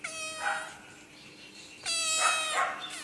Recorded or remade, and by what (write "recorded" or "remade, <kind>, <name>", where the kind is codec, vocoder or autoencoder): recorded